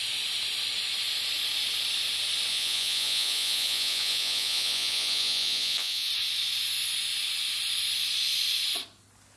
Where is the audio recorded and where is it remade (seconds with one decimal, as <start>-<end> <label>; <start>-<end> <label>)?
0.0-2.5 recorded; 2.5-6.1 remade; 6.1-9.4 recorded